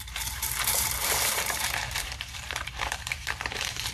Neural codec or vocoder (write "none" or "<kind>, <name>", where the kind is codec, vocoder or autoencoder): vocoder, BigVGAN v2